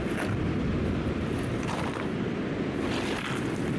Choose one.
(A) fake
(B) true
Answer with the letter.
B